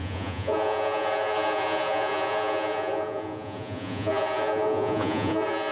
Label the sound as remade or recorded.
remade